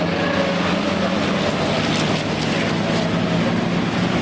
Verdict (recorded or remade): recorded